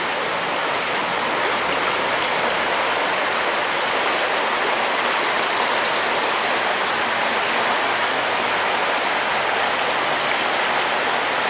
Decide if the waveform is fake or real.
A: real